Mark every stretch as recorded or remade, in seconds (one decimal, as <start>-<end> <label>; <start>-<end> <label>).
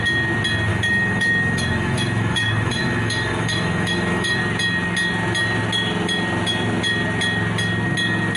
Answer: 0.0-0.7 recorded; 0.7-4.4 remade; 4.4-8.4 recorded